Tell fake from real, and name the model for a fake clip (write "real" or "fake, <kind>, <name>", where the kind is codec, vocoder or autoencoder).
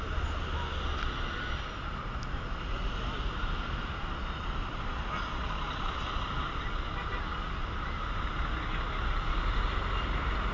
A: real